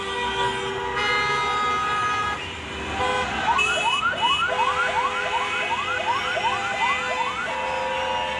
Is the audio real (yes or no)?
yes